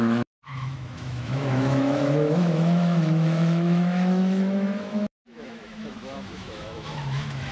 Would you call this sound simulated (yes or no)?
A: yes